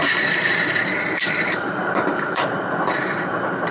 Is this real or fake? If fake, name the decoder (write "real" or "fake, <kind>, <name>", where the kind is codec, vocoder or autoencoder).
fake, vocoder, BigVGAN v2